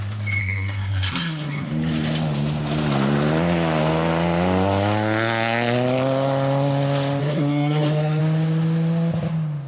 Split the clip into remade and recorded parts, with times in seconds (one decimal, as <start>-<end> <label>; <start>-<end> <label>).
0.0-0.4 recorded; 0.4-1.7 remade; 1.7-7.2 recorded; 7.2-8.2 remade; 8.2-9.7 recorded